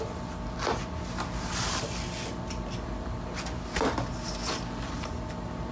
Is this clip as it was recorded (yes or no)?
yes